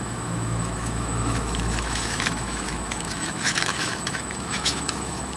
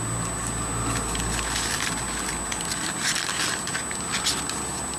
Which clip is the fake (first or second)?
first